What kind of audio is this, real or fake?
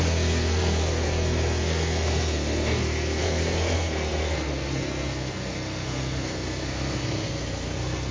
fake